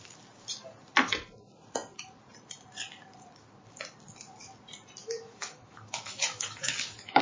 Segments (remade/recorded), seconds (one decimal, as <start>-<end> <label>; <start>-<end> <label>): 0.0-5.0 recorded; 5.0-7.2 remade